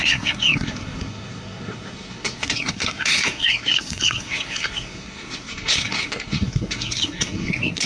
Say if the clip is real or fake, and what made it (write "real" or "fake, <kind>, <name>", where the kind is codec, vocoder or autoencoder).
fake, codec, SNAC